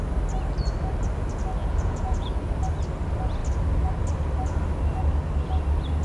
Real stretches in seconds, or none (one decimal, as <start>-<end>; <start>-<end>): 0.0-1.6; 2.3-6.0